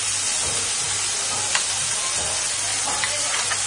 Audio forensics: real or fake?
real